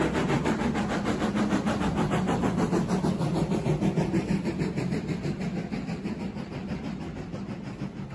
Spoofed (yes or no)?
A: yes